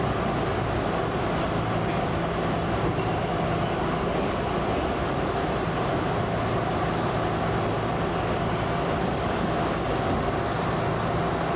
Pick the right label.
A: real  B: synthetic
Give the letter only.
A